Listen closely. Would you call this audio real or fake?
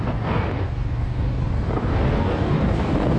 fake